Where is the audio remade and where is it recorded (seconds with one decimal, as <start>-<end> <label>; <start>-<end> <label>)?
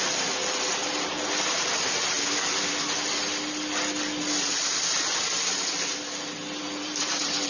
0.0-6.8 recorded; 6.8-7.5 remade